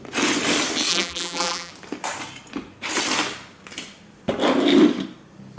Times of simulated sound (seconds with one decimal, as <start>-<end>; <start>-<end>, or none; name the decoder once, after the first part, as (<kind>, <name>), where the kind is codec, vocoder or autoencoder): 0.9-1.7 (vocoder, BigVGAN v2)